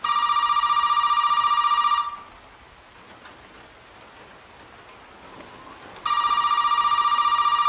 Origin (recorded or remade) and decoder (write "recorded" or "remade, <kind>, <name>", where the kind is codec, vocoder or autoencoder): recorded